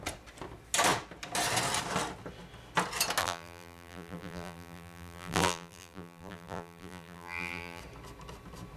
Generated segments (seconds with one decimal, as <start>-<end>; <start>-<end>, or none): 3.2-7.8